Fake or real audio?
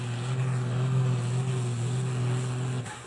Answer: real